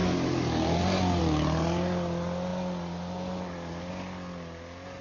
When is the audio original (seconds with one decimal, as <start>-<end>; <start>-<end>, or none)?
0.0-5.0